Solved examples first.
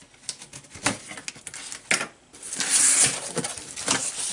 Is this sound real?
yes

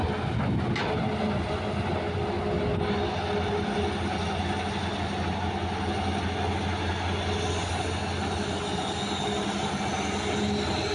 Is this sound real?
yes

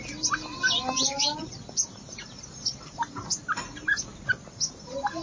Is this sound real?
yes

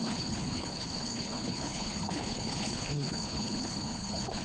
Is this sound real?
no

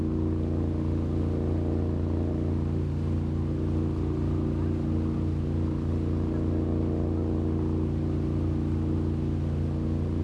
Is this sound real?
yes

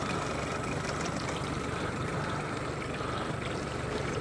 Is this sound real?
yes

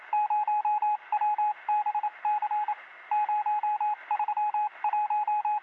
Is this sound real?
yes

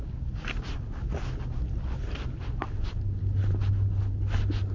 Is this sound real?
yes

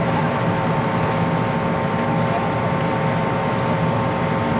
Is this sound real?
yes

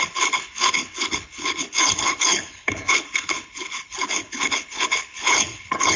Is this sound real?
no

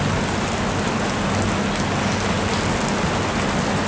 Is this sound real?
yes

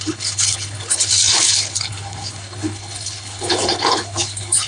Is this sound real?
no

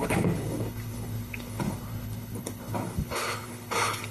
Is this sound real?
no